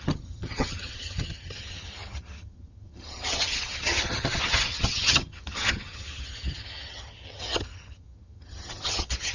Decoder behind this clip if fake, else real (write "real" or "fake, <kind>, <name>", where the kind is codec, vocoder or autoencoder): fake, vocoder, HiFi-GAN